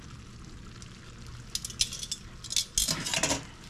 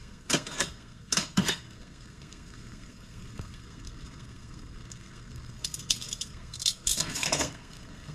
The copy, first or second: second